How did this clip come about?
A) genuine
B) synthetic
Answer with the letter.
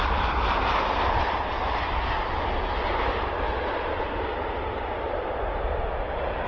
A